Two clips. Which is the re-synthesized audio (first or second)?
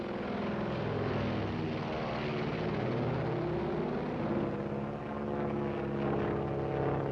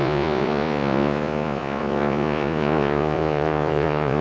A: second